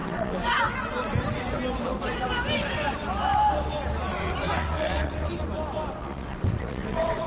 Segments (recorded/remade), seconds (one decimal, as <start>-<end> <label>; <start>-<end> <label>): 0.0-0.6 remade; 0.6-4.1 recorded; 4.1-5.3 remade; 5.3-6.0 recorded; 6.0-7.3 remade

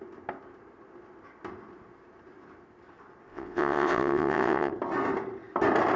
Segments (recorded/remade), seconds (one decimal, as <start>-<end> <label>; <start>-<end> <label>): 0.0-3.3 recorded; 3.3-4.7 remade; 4.7-6.0 recorded

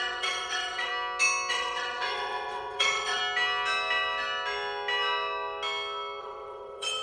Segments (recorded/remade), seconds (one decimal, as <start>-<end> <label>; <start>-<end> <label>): 0.0-0.9 remade; 0.9-1.5 recorded; 1.5-3.2 remade; 3.2-6.2 recorded; 6.2-7.0 remade

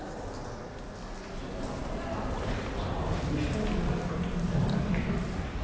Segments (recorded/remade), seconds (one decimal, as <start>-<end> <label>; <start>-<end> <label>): 0.0-5.6 recorded